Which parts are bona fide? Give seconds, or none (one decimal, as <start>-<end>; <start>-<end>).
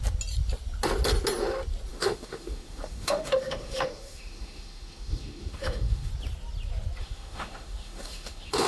0.0-1.9; 6.1-7.0